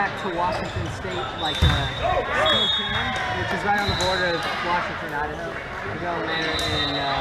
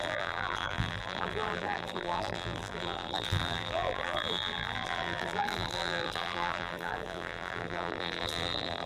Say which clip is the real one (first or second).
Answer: first